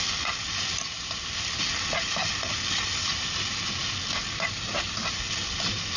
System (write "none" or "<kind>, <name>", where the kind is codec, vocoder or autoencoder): none